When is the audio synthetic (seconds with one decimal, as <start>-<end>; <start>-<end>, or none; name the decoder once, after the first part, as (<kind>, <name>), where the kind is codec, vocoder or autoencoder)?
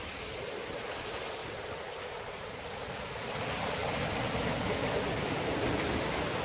1.4-3.2 (vocoder, BigVGAN v2)